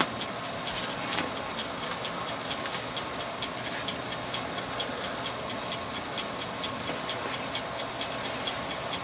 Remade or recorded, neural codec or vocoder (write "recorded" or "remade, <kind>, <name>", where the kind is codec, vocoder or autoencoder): recorded